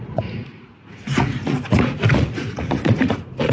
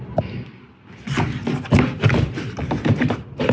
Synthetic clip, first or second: first